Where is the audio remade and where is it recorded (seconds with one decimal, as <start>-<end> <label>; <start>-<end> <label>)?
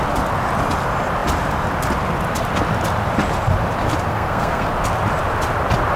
0.0-4.1 recorded; 4.1-4.7 remade; 4.7-6.0 recorded